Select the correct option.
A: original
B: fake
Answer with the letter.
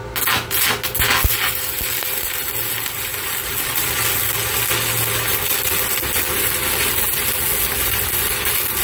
A